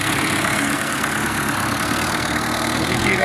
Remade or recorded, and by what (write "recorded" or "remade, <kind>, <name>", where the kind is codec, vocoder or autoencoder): remade, codec, SNAC